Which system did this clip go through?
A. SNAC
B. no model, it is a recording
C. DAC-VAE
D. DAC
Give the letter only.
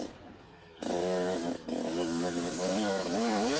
D